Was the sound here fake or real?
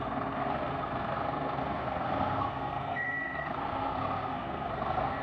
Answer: fake